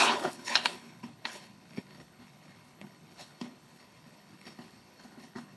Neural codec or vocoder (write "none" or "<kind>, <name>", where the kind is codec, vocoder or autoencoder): codec, HILCodec